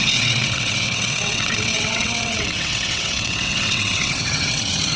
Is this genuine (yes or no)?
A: no